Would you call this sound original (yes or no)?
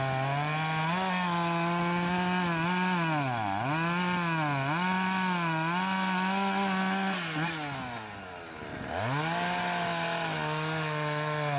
yes